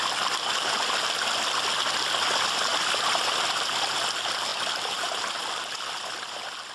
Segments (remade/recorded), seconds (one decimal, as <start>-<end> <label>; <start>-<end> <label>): 0.0-6.7 recorded